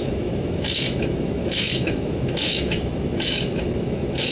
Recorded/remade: remade